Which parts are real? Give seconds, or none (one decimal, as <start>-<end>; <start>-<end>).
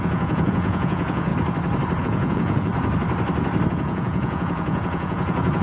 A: 1.3-2.0; 2.7-3.7